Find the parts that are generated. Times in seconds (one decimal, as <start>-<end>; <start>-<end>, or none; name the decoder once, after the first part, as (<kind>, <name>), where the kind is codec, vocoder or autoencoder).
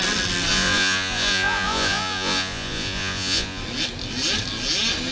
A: 0.5-3.6 (vocoder, Vocos)